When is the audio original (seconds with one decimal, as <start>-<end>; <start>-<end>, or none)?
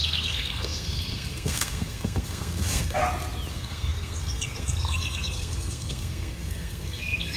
3.0-3.5